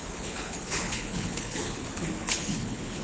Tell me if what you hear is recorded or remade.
remade